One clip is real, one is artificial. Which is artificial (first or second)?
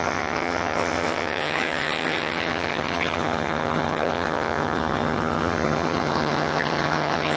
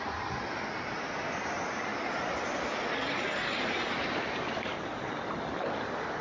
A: first